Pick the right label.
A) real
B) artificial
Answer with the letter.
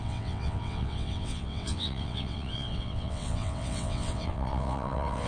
B